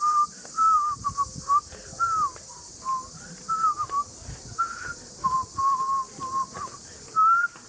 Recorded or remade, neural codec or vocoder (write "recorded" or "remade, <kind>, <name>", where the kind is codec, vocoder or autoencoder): recorded